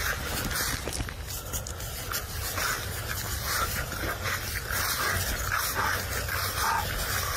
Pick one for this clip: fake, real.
real